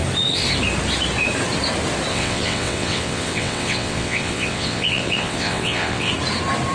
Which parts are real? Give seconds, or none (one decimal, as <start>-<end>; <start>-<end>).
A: 0.0-2.1; 6.1-6.7